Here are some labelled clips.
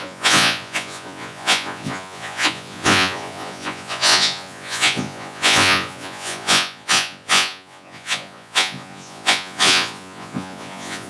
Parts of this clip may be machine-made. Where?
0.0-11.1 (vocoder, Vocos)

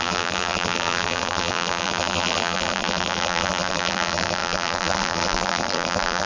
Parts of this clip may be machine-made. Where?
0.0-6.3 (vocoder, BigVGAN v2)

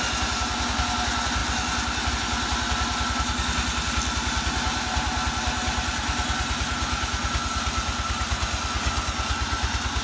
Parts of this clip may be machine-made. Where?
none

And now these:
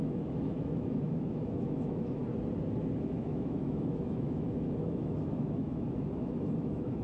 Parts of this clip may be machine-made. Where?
0.0-2.2 (autoencoder, DAC-VAE); 3.1-7.0